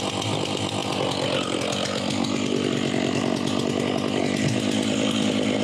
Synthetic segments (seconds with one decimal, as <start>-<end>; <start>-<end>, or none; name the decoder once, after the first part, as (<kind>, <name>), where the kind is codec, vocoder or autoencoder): none